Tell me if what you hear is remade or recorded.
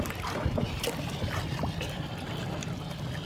recorded